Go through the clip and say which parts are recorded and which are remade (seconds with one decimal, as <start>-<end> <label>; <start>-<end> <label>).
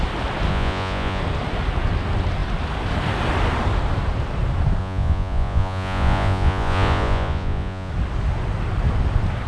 0.0-0.5 recorded; 0.5-1.2 remade; 1.2-4.8 recorded; 4.8-7.9 remade; 7.9-9.5 recorded